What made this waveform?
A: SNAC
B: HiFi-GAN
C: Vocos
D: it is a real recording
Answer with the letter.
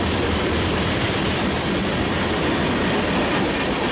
D